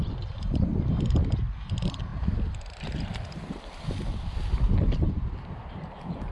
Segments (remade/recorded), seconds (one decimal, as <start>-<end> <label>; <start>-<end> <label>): 0.0-6.3 recorded